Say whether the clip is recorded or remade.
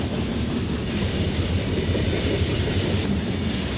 recorded